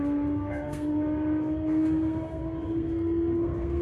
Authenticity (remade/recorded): remade